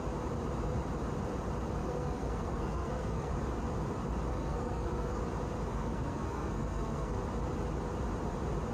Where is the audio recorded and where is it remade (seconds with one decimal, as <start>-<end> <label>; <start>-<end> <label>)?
0.0-1.8 recorded; 1.8-3.3 remade; 3.3-4.3 recorded; 4.3-5.2 remade; 5.2-5.7 recorded; 5.7-7.2 remade; 7.2-8.7 recorded